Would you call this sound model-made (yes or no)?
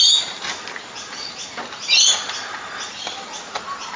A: no